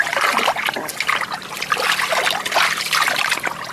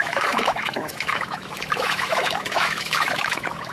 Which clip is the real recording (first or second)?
first